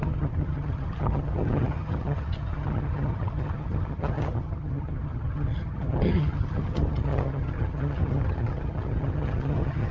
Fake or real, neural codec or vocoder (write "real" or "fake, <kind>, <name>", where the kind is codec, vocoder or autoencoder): fake, vocoder, HiFi-GAN